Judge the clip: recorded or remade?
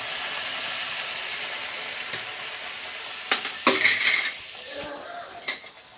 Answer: recorded